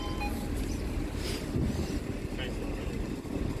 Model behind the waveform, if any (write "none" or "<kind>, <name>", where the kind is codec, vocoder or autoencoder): none